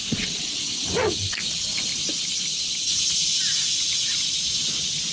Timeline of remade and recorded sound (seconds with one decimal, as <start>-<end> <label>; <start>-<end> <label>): 0.0-0.5 remade; 0.5-5.1 recorded